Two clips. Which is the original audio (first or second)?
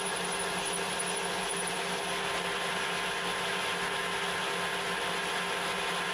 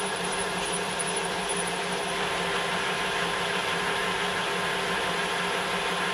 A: first